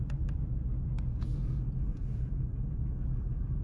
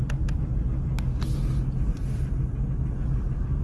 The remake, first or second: first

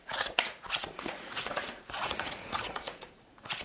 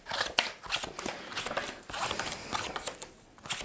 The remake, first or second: first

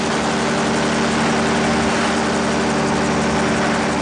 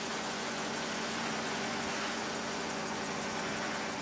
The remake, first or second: second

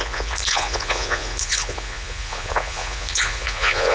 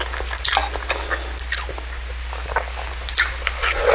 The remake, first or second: first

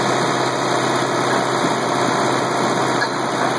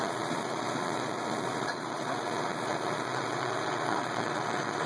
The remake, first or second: second